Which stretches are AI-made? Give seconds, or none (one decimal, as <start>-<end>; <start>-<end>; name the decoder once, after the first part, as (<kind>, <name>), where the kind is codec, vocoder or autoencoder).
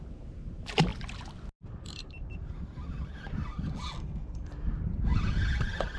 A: 5.1-5.6 (vocoder, Vocos)